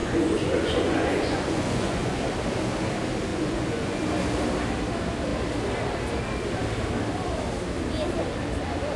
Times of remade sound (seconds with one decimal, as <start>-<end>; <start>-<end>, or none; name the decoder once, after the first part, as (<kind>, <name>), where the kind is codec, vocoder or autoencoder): 0.0-2.2 (vocoder, Vocos); 3.3-4.0